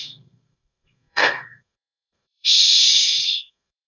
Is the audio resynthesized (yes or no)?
yes